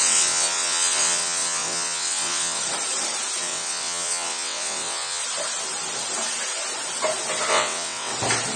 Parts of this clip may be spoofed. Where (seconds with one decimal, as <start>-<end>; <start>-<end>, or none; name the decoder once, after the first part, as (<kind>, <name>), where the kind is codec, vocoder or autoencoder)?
0.0-2.6 (vocoder, WaveNeXt); 3.4-5.2; 7.5-8.1